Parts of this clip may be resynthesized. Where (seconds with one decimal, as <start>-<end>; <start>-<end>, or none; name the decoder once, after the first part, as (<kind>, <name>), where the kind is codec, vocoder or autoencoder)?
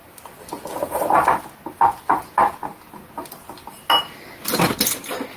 none